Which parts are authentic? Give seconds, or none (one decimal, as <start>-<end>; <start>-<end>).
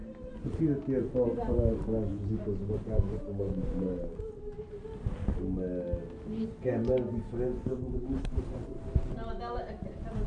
0.6-2.1; 4.8-7.6; 9.3-10.3